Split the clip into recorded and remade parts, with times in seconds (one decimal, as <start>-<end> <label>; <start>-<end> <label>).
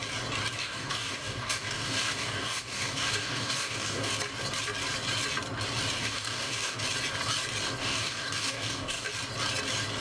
0.0-0.6 recorded; 0.6-4.1 remade; 4.1-6.0 recorded; 6.0-6.8 remade; 6.8-7.8 recorded; 7.8-9.1 remade; 9.1-10.0 recorded